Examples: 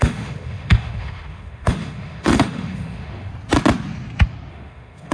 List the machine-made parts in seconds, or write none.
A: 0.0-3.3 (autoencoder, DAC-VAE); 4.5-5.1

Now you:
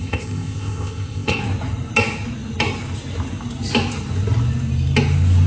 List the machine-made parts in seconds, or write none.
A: 0.0-1.4 (codec, ZipCodec)

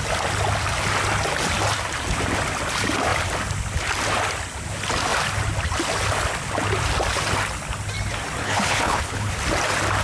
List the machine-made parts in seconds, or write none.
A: 8.4-9.3 (codec, HILCodec)

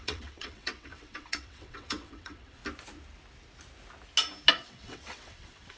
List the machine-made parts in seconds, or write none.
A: 0.0-2.6 (vocoder, WaveNeXt); 4.5-5.8